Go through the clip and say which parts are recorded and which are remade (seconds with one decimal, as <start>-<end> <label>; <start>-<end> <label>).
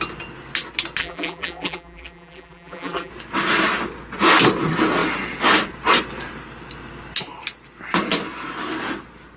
0.0-1.0 recorded; 1.0-3.1 remade; 3.1-9.4 recorded